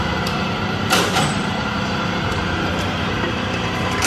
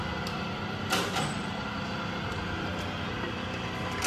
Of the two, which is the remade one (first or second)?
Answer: first